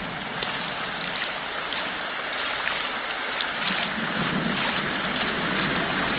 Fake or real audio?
real